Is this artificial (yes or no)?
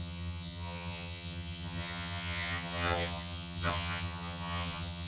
yes